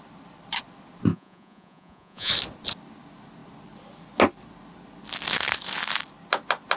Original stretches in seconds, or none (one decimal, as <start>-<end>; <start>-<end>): 0.0-1.1; 2.3-6.8